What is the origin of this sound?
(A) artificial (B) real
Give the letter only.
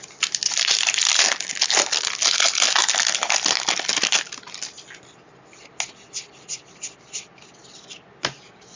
B